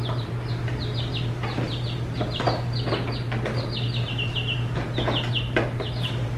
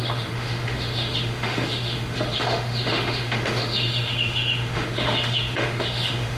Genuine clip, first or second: first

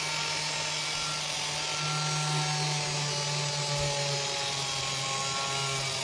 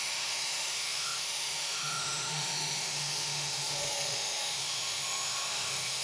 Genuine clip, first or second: first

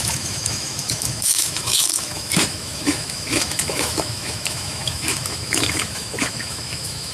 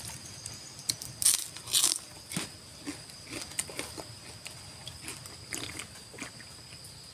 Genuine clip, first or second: second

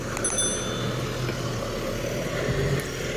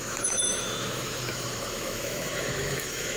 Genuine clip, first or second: first